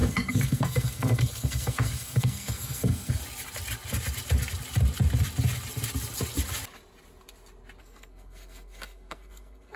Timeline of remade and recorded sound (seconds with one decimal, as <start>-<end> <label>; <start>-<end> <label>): 0.0-3.2 remade; 3.2-7.8 recorded; 7.8-9.8 remade